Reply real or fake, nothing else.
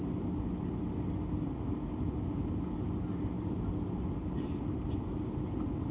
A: real